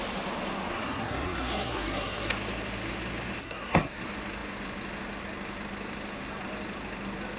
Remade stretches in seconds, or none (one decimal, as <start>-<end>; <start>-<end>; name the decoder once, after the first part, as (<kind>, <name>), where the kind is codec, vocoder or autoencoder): 0.7-2.3 (codec, SNAC); 3.4-4.0